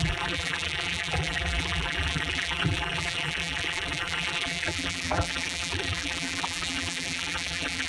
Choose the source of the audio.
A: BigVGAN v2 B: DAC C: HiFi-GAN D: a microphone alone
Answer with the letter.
A